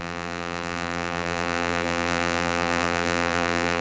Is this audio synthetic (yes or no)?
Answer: yes